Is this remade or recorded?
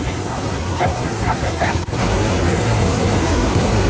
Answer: remade